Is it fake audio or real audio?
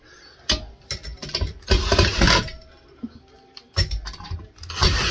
real